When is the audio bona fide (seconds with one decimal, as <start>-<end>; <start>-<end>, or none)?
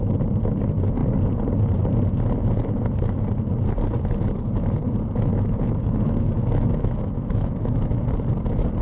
0.0-5.3; 8.1-8.8